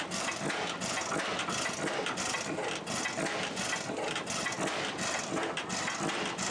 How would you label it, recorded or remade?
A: recorded